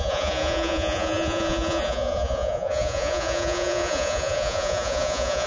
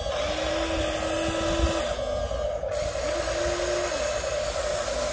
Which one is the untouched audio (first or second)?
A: second